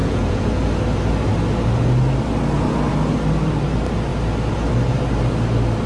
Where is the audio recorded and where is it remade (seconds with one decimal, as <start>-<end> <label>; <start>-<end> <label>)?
0.0-0.5 remade; 0.5-5.9 recorded